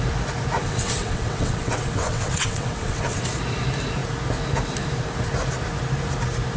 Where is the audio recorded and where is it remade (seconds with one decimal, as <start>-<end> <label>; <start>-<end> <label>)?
0.0-0.6 recorded; 0.6-3.3 remade; 3.3-6.6 recorded